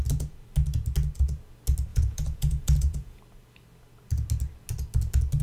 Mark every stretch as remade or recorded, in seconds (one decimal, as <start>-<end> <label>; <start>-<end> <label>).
0.0-1.9 recorded; 1.9-3.2 remade; 3.2-5.4 recorded